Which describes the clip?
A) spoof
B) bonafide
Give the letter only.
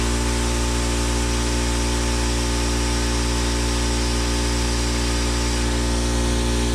B